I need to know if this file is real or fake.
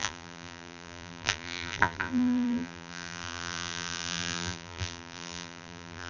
fake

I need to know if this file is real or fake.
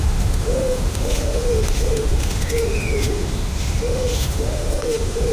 fake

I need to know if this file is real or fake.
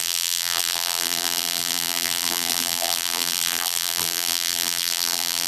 fake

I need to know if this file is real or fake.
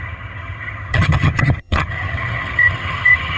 fake